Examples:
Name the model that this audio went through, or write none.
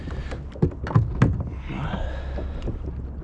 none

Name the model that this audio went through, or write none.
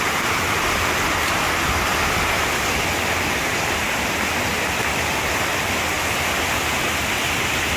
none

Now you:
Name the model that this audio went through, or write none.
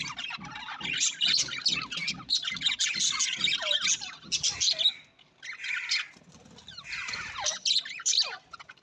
none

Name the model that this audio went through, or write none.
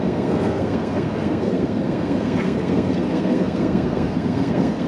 codec, SNAC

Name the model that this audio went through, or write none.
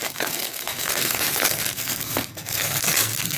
codec, SNAC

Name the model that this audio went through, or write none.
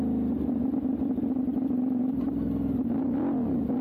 none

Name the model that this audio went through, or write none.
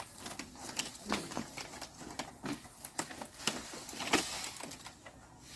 none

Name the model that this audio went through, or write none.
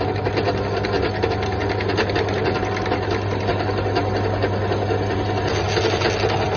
none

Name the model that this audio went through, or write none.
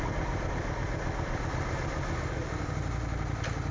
none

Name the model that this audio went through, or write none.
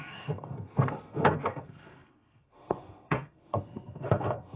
codec, SNAC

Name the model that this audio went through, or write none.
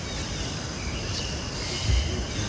none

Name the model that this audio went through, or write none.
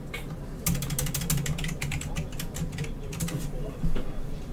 none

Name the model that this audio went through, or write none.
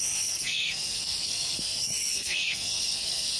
codec, SNAC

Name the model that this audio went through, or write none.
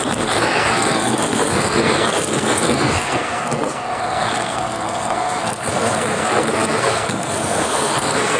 codec, SNAC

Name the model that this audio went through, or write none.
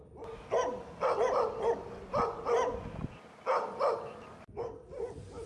none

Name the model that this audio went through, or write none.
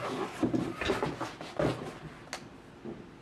none